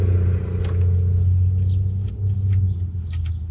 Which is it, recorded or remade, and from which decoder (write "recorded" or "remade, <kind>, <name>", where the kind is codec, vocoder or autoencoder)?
recorded